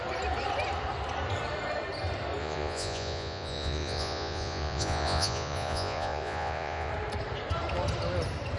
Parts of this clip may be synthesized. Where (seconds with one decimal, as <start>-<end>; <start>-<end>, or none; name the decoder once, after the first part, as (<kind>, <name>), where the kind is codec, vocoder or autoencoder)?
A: 2.4-6.9 (vocoder, Vocos)